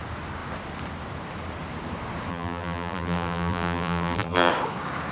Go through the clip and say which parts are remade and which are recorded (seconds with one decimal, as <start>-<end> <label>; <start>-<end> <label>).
0.0-2.3 recorded; 2.3-4.5 remade; 4.5-5.1 recorded